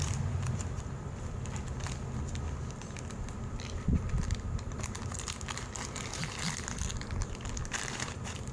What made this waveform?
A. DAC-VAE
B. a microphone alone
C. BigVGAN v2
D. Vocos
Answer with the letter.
C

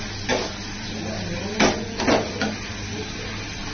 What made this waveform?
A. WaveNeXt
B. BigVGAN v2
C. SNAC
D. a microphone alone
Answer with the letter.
D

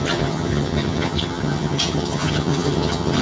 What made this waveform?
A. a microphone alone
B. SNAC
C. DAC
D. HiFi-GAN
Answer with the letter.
D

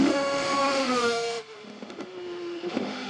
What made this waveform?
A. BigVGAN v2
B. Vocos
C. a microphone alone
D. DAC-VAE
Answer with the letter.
D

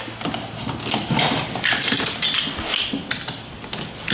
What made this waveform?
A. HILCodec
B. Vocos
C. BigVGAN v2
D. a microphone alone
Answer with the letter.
D